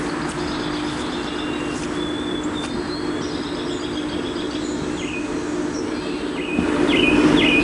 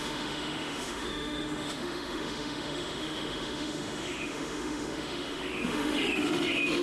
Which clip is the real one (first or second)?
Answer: first